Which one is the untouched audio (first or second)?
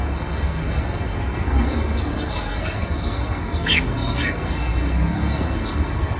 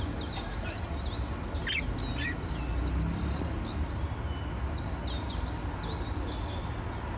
second